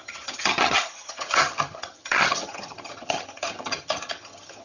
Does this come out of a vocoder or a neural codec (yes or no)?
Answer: yes